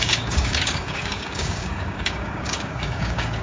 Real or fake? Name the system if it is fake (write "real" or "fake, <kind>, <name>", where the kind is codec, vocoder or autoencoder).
fake, codec, DAC